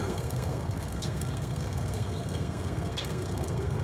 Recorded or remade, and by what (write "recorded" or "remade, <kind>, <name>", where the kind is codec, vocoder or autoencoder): remade, codec, SNAC